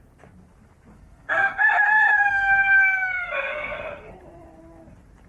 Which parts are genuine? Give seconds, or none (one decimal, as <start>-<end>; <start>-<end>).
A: 0.0-0.9; 4.1-5.3